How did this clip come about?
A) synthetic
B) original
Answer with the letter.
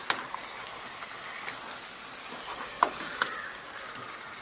B